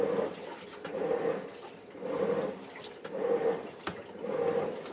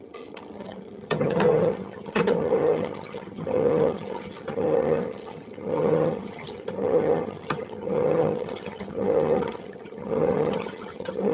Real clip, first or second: first